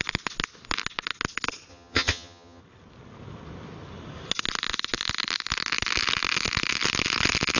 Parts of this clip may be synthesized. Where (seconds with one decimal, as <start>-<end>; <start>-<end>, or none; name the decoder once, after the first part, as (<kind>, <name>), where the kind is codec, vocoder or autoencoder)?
1.7-2.6 (vocoder, HiFi-GAN)